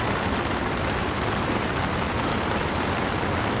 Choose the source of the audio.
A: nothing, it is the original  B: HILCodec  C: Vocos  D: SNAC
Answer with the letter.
A